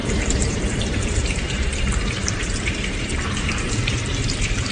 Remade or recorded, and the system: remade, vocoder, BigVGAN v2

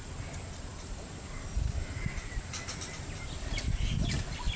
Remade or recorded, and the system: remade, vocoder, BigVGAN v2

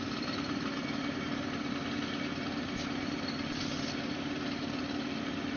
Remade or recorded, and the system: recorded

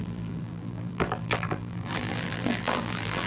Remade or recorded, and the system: remade, vocoder, BigVGAN v2